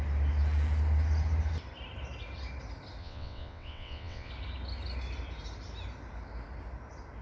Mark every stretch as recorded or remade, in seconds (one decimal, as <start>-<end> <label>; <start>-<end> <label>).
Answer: 0.0-3.0 recorded; 3.0-4.3 remade; 4.3-7.2 recorded